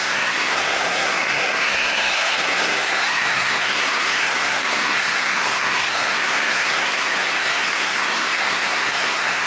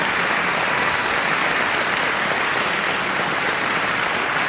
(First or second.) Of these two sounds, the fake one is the first